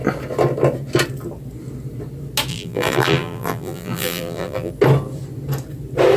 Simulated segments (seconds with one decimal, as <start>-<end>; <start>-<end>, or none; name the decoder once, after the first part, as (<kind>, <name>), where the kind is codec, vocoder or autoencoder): 2.5-4.7 (vocoder, BigVGAN v2)